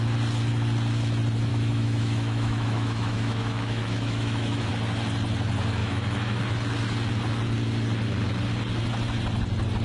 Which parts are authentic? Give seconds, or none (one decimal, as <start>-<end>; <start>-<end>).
0.0-1.5; 4.7-5.8; 6.4-9.8